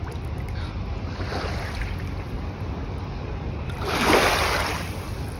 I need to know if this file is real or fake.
real